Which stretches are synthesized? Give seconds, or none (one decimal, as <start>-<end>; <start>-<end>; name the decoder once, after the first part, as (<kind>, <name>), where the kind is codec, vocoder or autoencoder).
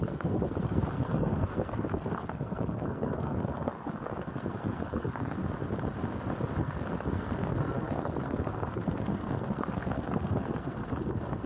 0.0-5.4 (codec, SNAC); 6.6-11.5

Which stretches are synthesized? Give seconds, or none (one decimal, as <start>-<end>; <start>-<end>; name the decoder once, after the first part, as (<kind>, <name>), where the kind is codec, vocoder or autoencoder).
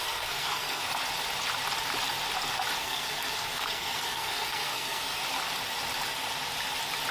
0.0-0.8 (codec, SNAC); 2.8-5.2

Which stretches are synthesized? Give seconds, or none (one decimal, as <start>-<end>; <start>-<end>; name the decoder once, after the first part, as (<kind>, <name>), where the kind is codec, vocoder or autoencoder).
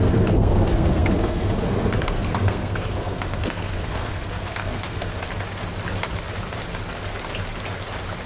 0.0-5.1 (codec, SNAC)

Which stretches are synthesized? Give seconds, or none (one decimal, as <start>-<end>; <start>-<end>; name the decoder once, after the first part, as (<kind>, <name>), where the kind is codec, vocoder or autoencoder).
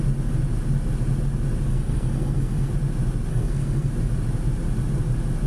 1.7-2.7 (codec, SNAC); 3.3-3.9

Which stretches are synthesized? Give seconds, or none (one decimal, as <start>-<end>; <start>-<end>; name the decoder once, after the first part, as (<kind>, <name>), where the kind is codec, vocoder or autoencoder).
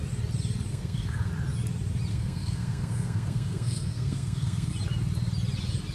0.7-1.3 (codec, SNAC); 2.1-4.7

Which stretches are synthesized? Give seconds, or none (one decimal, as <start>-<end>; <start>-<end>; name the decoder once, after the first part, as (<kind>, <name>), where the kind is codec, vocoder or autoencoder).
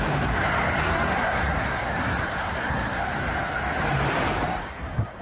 0.8-3.0 (codec, SNAC); 4.6-5.2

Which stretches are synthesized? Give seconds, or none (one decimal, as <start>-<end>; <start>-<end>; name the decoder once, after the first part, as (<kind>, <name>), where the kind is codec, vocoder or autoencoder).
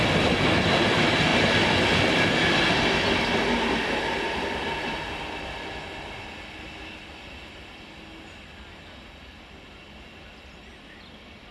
none